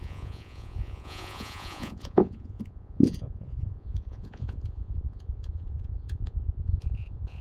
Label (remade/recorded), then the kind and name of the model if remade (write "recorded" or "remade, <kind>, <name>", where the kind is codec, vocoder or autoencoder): remade, vocoder, Vocos